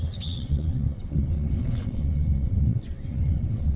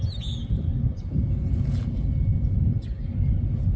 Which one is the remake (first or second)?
first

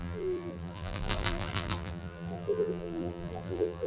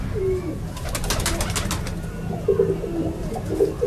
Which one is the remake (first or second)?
first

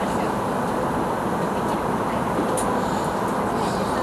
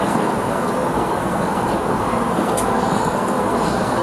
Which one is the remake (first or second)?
second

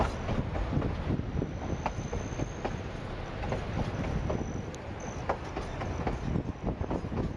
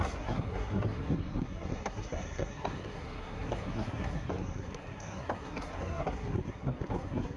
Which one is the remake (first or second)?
second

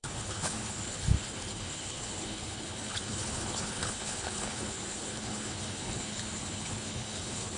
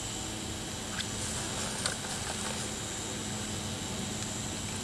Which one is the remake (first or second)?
first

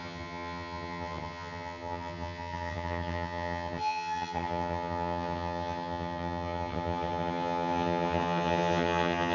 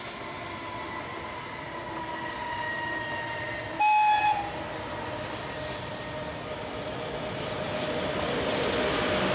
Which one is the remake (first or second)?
first